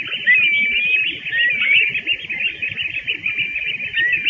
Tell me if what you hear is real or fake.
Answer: real